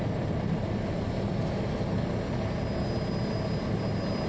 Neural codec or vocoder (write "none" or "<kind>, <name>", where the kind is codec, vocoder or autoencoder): none